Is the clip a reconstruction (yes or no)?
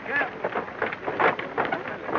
no